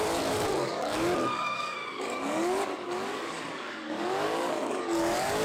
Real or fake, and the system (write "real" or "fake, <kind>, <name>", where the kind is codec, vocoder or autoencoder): fake, codec, DAC